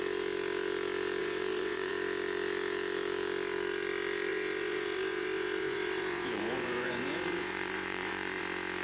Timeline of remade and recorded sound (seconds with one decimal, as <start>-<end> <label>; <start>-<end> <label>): 0.0-1.2 recorded; 1.2-1.9 remade; 1.9-4.3 recorded; 4.3-8.4 remade; 8.4-8.8 recorded